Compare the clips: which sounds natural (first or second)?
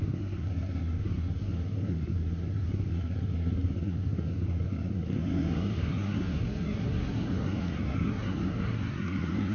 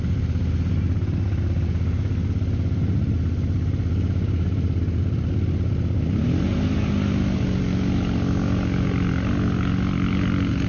second